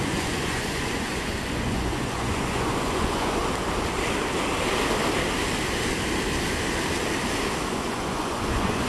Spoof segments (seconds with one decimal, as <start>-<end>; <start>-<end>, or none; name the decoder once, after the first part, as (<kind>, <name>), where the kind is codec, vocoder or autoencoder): 0.0-3.4 (vocoder, Vocos); 7.7-8.9